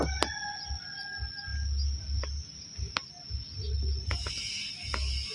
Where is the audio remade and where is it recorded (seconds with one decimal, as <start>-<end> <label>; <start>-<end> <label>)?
0.0-5.3 recorded